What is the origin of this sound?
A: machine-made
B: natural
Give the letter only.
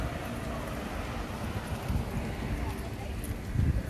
B